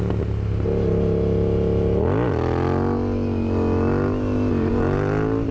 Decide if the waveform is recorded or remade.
recorded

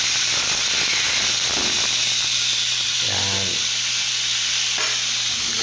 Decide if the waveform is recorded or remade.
recorded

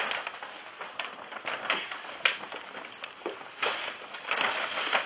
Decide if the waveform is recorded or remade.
recorded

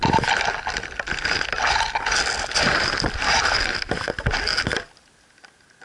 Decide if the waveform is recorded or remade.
recorded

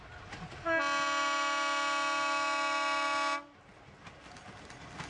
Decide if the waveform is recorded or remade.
recorded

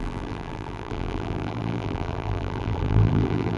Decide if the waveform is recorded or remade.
remade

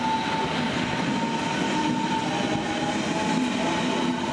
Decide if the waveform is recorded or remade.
recorded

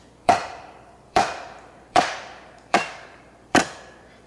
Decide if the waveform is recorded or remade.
remade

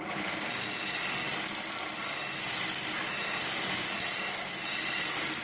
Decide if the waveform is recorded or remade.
recorded